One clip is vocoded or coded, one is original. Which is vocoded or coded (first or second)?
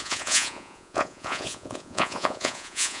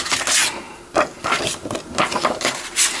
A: first